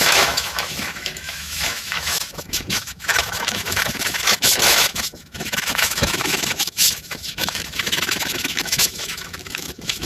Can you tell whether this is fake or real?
fake